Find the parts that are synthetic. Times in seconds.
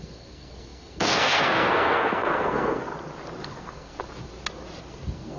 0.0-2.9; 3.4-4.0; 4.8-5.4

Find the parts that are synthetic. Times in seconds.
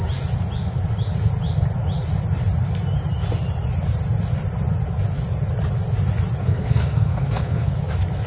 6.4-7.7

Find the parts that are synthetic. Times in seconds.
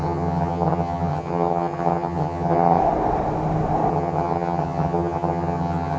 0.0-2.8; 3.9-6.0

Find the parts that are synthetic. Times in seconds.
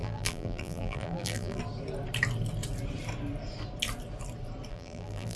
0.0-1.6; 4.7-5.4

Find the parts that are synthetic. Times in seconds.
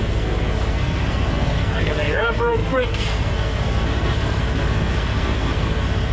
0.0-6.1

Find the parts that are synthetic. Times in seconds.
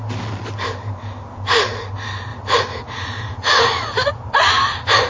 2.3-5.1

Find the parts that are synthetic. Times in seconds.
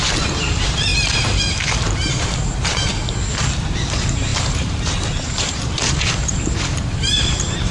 0.0-0.9; 2.1-2.9; 3.6-7.7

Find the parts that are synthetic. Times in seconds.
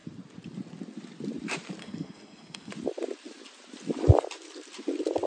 1.8-2.7